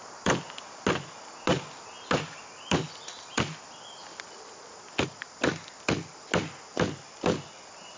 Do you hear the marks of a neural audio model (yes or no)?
no